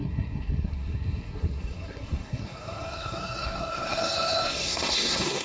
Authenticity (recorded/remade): remade